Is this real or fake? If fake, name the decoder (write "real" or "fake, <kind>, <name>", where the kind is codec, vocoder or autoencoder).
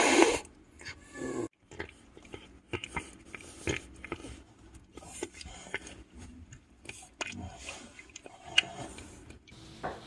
real